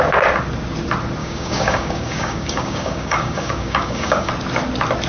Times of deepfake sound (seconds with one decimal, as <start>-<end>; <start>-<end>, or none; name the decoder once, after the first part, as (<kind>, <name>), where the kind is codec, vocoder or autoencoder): 1.2-4.3 (codec, DAC)